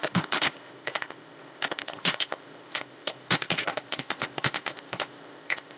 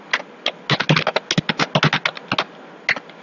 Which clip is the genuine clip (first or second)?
second